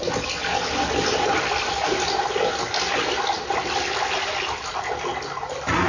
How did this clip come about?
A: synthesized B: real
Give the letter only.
B